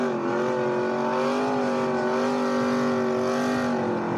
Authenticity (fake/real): real